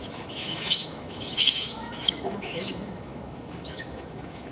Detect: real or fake fake